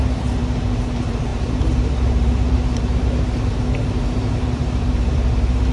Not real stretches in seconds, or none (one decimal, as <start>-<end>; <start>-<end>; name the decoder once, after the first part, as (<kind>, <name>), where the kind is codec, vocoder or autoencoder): 0.0-0.4 (vocoder, BigVGAN v2); 0.9-5.7